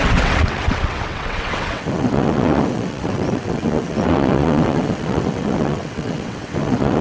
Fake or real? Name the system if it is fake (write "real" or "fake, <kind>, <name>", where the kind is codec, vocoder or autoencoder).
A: fake, vocoder, WaveNeXt